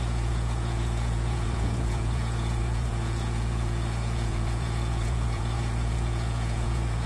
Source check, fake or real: fake